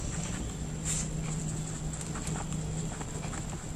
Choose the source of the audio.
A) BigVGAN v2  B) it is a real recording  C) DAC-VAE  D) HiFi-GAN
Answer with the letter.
B